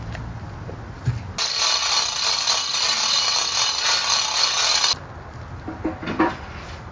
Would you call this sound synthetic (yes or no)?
no